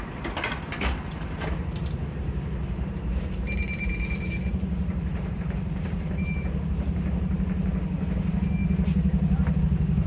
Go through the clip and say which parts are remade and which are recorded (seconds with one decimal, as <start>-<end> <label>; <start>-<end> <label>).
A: 0.0-2.6 recorded; 2.6-7.3 remade; 7.3-10.1 recorded